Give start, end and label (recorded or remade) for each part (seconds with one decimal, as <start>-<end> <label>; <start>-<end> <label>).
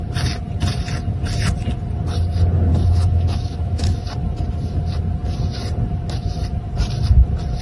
0.0-2.7 recorded; 2.7-4.0 remade; 4.0-7.6 recorded